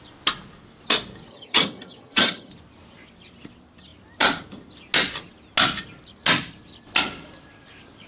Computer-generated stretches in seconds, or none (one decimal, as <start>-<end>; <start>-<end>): 1.3-2.5